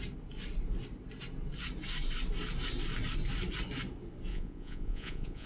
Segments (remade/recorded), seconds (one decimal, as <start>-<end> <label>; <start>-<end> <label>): 0.0-4.3 recorded; 4.3-5.5 remade